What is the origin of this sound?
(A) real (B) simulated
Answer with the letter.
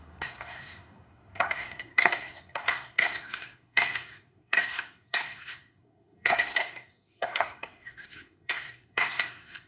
B